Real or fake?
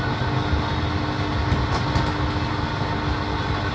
real